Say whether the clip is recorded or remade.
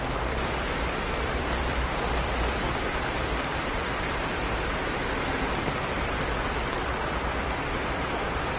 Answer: remade